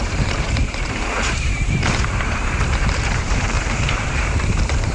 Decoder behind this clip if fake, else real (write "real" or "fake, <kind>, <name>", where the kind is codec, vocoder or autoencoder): fake, vocoder, BigVGAN v2